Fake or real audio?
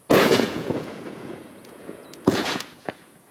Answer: fake